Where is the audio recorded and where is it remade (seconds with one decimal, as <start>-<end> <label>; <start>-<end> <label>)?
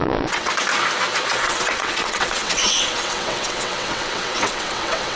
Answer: 0.0-0.5 remade; 0.5-1.3 recorded; 1.3-5.2 remade